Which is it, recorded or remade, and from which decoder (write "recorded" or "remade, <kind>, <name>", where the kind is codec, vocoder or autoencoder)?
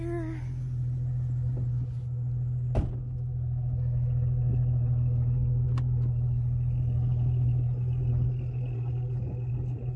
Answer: recorded